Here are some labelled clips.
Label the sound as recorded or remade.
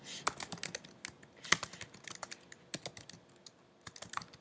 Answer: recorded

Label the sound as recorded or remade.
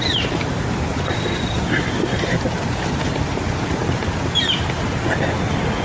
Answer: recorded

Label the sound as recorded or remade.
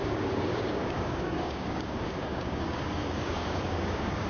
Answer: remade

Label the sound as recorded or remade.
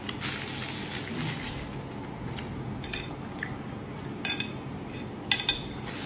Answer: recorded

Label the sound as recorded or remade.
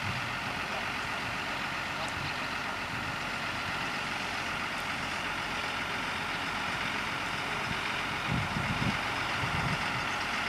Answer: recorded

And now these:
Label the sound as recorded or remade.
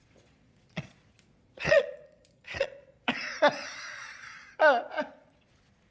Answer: remade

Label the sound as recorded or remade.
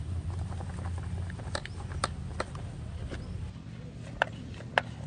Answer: recorded